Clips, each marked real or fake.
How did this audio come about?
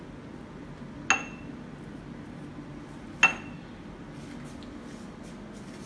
real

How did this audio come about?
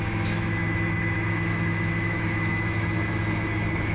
fake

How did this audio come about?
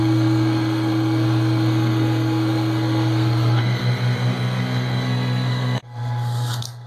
fake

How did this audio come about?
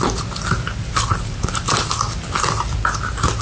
real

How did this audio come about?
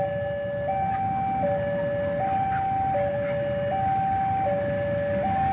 real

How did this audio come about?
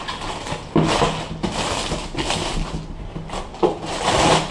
real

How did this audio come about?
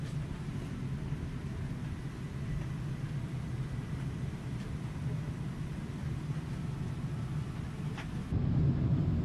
real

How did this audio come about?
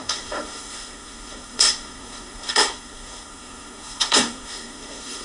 fake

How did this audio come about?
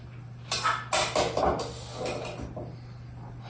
real